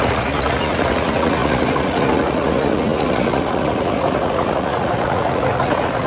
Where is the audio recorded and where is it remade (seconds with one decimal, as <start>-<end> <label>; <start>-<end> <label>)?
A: 0.0-6.1 remade